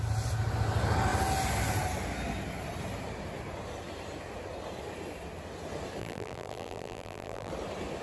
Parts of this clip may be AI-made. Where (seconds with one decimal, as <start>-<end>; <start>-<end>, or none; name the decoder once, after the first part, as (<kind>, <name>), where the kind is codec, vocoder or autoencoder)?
6.0-7.5 (vocoder, BigVGAN v2)